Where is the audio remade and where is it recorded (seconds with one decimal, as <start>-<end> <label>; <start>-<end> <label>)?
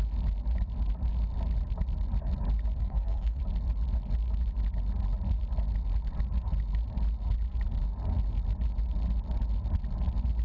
0.0-2.8 recorded; 2.8-3.4 remade; 3.4-10.4 recorded